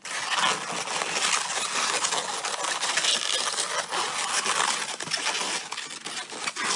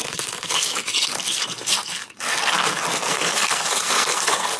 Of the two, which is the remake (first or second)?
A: second